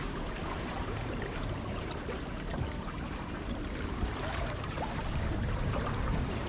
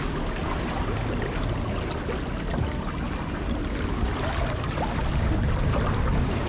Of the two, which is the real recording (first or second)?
second